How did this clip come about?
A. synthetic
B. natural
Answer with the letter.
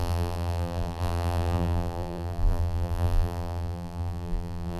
A